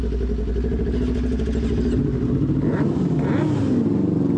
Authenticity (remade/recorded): recorded